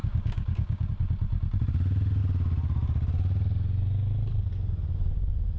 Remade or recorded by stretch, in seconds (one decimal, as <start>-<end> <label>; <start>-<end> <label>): 0.0-0.9 remade; 0.9-5.6 recorded